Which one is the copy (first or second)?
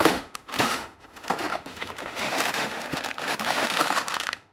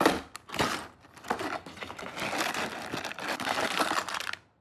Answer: first